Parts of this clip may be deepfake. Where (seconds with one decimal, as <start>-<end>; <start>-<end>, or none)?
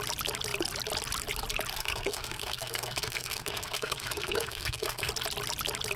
1.7-5.1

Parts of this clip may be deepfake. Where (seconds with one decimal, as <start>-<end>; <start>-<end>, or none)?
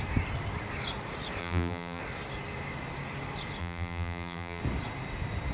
1.4-2.0; 3.6-4.6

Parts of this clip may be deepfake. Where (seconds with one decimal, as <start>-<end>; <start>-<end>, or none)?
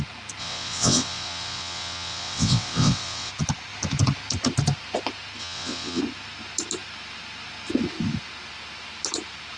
0.4-3.3; 5.4-6.0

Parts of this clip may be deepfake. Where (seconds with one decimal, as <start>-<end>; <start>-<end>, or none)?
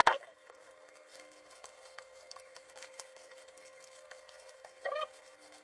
0.0-5.6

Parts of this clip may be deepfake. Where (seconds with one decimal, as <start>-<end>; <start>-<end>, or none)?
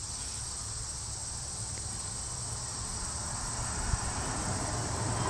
none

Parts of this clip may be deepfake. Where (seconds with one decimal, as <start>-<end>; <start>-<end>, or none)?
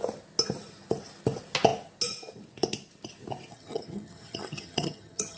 3.5-5.4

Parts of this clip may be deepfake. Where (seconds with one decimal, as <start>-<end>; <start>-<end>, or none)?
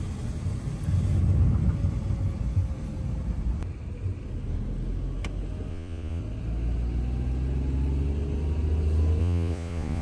5.7-6.2; 9.2-10.0